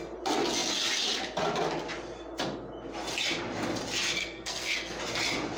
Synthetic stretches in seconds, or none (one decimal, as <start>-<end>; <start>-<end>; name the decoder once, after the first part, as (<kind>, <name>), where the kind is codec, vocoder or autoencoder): 4.2-5.0 (codec, SNAC)